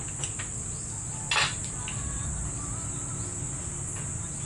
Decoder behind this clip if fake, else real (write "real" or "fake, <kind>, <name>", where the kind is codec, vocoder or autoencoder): real